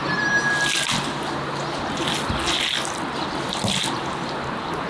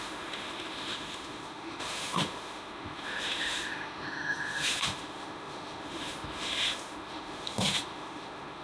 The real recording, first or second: first